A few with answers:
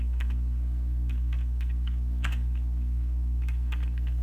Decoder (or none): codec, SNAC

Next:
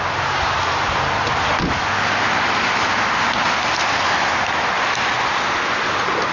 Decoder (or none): none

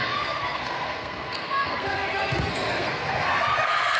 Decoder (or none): codec, SNAC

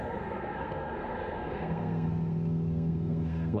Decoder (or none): codec, SNAC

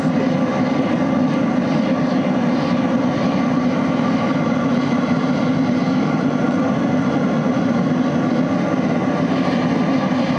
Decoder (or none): none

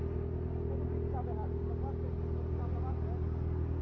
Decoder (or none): none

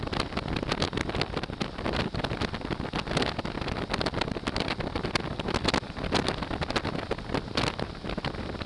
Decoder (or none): none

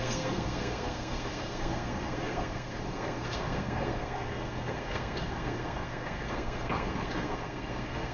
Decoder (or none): codec, SNAC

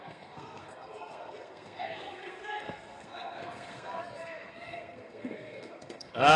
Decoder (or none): codec, SNAC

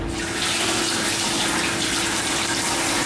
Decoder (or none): none